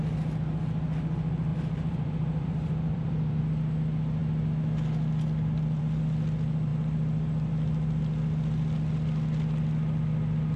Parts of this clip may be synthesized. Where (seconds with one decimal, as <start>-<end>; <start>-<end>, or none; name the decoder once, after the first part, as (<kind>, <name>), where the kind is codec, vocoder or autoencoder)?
1.5-3.4 (vocoder, BigVGAN v2)